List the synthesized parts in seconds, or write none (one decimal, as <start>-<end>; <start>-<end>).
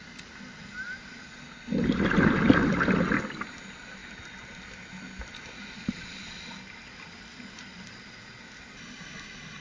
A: none